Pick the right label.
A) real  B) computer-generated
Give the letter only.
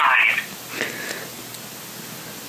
A